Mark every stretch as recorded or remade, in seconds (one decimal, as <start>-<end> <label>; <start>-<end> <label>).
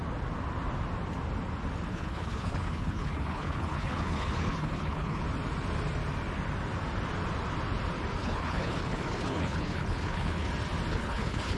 0.0-1.9 recorded; 1.9-5.2 remade; 5.2-8.2 recorded; 8.2-10.5 remade; 10.5-10.9 recorded; 10.9-11.6 remade